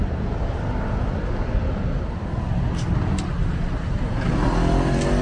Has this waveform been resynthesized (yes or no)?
no